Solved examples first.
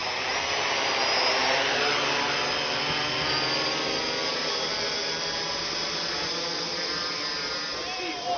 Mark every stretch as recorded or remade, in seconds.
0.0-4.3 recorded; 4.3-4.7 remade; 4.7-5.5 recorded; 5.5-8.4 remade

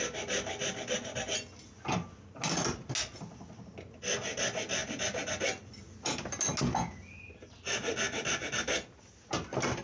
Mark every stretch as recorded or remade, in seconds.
0.0-9.8 recorded

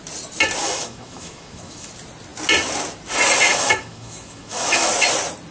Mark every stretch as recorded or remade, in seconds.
0.0-0.6 recorded; 0.6-1.9 remade; 1.9-3.5 recorded; 3.5-4.9 remade; 4.9-5.5 recorded